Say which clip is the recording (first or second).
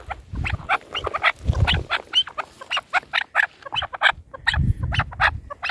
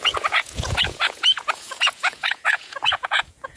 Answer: first